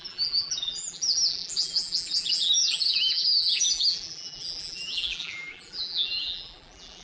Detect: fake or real fake